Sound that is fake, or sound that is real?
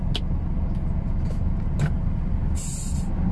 real